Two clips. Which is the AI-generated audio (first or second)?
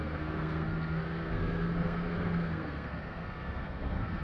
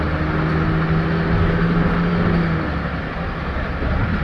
first